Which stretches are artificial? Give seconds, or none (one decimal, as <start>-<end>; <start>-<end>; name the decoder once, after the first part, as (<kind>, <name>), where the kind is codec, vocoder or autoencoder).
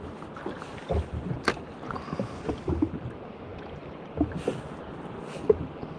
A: none